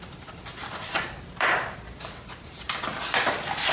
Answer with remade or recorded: remade